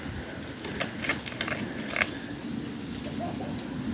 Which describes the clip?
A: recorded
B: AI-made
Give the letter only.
A